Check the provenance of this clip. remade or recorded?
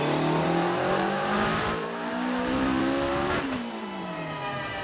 remade